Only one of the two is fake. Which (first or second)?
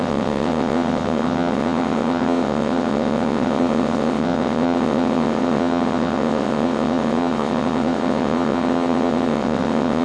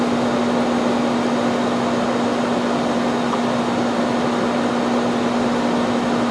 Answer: first